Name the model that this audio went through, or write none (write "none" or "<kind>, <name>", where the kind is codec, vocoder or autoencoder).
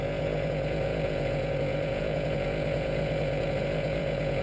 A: vocoder, Vocos